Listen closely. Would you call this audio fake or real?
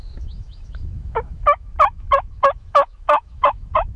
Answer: fake